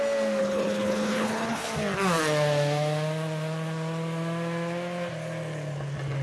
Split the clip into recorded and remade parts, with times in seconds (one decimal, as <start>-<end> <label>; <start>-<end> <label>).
0.0-0.4 recorded; 0.4-1.7 remade; 1.7-6.2 recorded